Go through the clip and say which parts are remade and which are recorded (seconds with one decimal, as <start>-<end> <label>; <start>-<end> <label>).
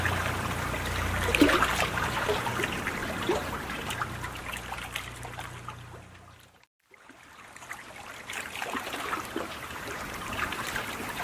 0.0-8.6 recorded; 8.6-11.2 remade